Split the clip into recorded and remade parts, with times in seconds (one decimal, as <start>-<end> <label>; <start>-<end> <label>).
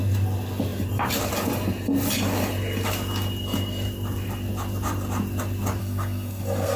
0.0-5.8 recorded; 5.8-6.8 remade